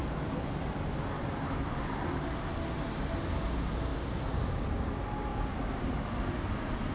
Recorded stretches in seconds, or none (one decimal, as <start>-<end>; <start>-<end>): 0.0-3.9; 4.6-5.3; 5.8-6.9